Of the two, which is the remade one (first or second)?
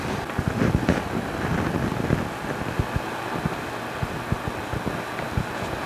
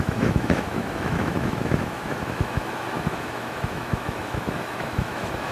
second